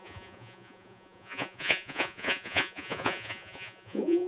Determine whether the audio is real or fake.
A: fake